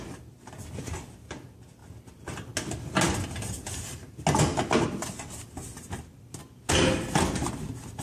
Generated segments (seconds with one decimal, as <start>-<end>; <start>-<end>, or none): none

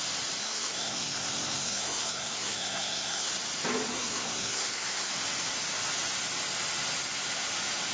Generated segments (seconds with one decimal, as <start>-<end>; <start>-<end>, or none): 0.4-3.3; 3.9-5.1

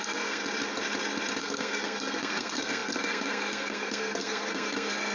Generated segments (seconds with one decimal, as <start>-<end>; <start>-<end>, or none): 0.0-0.4; 1.4-5.1

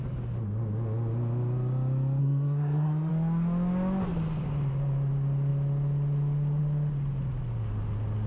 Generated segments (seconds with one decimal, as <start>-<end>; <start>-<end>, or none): 2.2-3.1

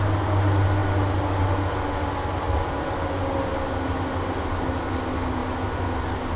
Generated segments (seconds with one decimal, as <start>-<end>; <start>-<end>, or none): none

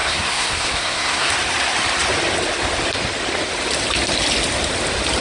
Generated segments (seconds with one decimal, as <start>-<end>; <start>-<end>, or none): 0.0-1.3

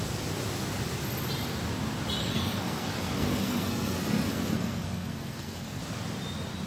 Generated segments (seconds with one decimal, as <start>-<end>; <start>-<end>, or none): 2.2-5.8